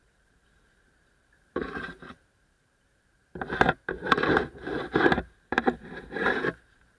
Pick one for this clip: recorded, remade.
remade